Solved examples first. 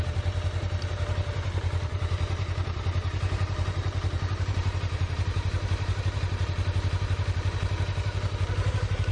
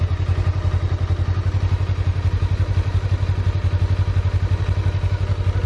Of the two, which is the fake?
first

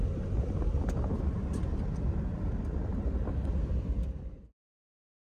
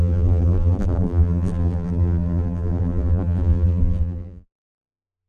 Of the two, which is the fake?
second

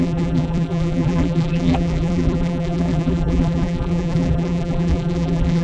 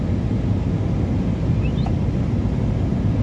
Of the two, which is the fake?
first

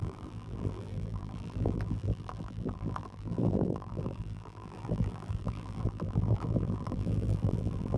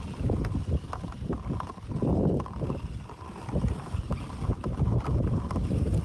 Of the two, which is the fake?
first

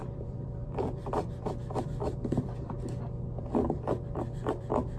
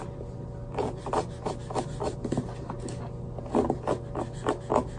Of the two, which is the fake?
first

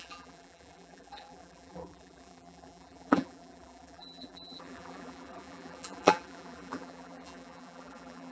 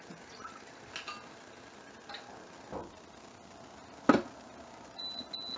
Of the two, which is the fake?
first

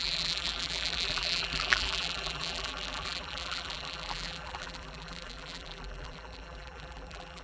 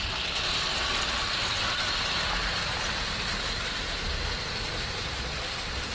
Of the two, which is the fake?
first